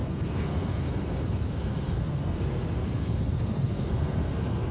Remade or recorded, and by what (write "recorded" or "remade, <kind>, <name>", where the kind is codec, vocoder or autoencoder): remade, codec, SNAC